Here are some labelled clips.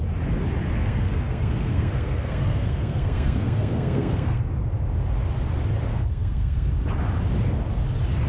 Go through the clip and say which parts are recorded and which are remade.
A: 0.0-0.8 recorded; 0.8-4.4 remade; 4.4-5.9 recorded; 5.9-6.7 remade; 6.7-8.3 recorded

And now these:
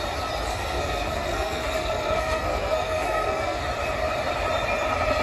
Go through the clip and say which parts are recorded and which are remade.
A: 0.0-0.5 recorded; 0.5-3.6 remade; 3.6-5.2 recorded